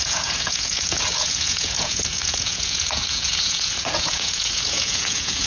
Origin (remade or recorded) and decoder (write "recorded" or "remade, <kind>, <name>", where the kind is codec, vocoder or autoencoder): remade, vocoder, Vocos